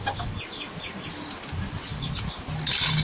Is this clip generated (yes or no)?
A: no